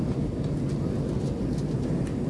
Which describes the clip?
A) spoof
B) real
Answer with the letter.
B